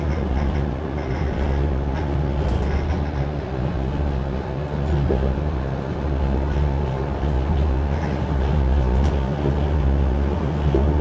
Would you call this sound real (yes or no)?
no